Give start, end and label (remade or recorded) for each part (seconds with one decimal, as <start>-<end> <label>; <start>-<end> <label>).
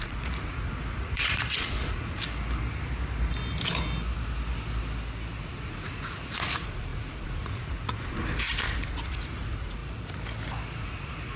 0.0-2.2 remade; 2.2-5.4 recorded; 5.4-9.8 remade; 9.8-10.8 recorded; 10.8-11.4 remade